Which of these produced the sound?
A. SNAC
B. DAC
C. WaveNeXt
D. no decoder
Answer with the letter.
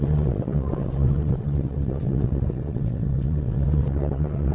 C